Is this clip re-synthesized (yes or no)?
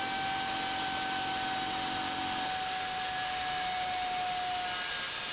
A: no